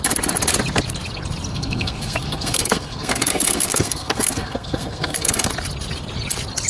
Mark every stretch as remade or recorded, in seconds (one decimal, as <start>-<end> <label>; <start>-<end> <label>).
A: 0.0-1.5 recorded; 1.5-5.5 remade; 5.5-6.7 recorded